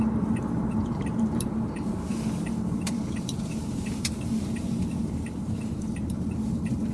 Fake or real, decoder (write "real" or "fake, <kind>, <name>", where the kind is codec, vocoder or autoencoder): fake, vocoder, BigVGAN v2